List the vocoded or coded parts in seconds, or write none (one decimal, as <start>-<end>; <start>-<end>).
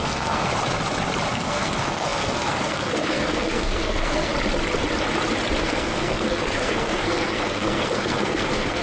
0.0-0.5; 1.3-4.3; 5.6-8.8